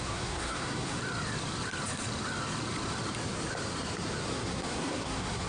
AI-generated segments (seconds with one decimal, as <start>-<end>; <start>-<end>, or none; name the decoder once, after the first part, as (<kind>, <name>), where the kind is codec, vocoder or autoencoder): 0.0-1.0 (codec, SNAC); 4.3-5.5